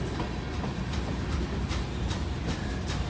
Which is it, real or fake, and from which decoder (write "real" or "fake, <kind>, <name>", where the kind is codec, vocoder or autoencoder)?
real